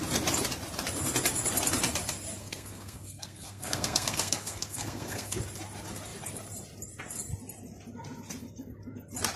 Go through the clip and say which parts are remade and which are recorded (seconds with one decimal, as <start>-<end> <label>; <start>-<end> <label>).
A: 0.0-2.4 recorded; 2.4-5.4 remade; 5.4-9.4 recorded